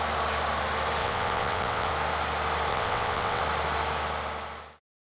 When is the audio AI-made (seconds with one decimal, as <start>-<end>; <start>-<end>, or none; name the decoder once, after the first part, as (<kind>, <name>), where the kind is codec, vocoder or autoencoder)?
1.0-1.9 (vocoder, WaveNeXt); 2.7-3.4